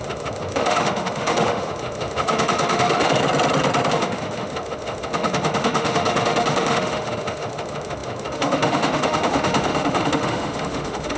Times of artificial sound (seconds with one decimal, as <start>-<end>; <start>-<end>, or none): 0.0-3.2; 3.9-11.2